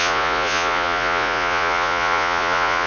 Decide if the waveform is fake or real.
fake